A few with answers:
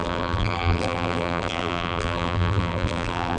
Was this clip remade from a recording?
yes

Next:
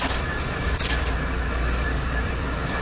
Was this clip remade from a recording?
yes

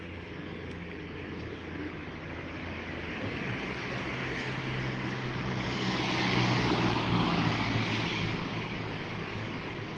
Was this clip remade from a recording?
yes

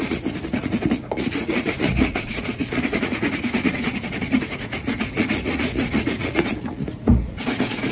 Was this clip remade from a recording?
yes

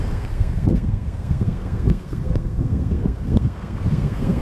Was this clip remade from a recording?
yes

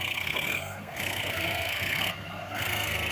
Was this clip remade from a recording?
yes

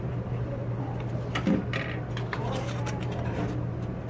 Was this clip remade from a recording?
no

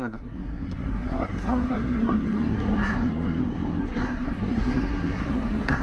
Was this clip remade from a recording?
yes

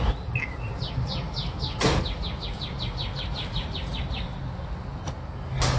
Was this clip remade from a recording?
no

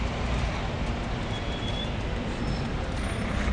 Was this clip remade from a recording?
no